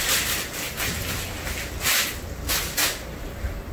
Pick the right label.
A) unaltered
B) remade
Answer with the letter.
A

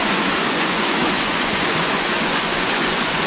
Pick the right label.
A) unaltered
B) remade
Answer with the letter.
B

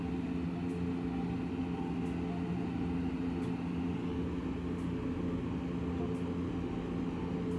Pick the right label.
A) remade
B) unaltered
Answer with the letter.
B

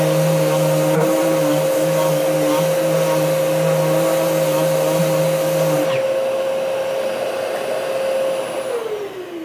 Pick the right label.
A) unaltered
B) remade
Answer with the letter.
A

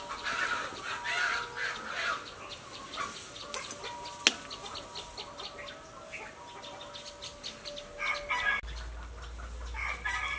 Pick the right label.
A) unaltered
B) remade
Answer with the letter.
A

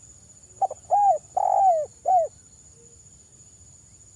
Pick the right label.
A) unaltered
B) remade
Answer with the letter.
A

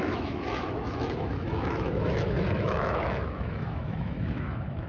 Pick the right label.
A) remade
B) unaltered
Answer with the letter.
A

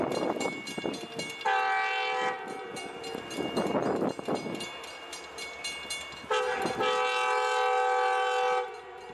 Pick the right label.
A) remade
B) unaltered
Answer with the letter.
B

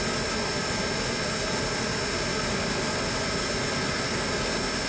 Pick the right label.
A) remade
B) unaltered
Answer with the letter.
B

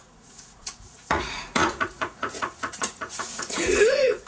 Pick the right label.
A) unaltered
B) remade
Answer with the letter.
B